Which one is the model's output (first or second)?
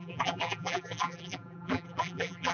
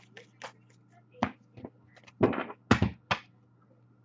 first